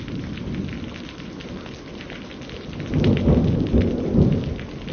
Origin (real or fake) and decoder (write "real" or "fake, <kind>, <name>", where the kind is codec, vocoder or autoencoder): real